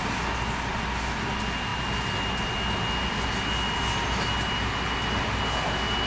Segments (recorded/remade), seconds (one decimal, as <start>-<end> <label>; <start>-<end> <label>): 0.0-6.1 recorded